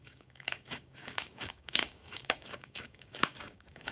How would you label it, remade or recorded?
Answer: remade